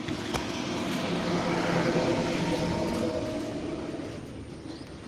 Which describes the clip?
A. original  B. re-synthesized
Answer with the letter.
A